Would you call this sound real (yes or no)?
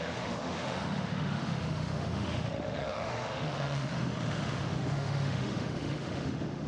no